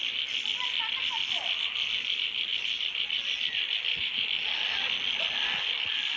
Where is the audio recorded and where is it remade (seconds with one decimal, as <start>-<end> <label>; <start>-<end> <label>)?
0.0-6.2 recorded